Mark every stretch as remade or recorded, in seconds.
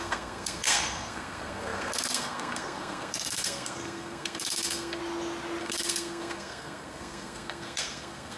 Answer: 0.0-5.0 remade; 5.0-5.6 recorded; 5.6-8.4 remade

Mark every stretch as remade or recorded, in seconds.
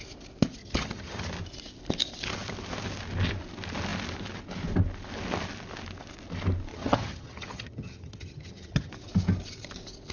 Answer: 0.0-0.6 recorded; 0.6-1.2 remade; 1.2-6.7 recorded; 6.7-8.9 remade; 8.9-10.1 recorded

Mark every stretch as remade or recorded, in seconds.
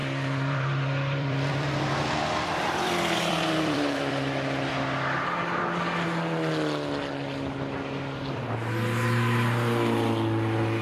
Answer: 0.0-4.7 remade; 4.7-10.8 recorded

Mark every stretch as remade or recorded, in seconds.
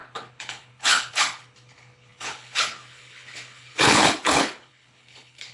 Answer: 0.0-5.5 remade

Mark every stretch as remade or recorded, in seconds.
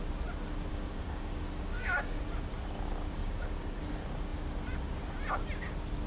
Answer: 0.0-0.7 recorded; 0.7-2.2 remade; 2.2-3.2 recorded; 3.2-3.8 remade; 3.8-6.1 recorded